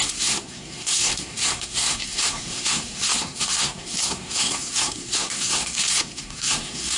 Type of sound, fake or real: fake